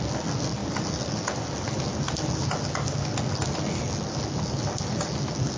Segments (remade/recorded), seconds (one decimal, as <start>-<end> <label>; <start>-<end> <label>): 0.0-5.6 recorded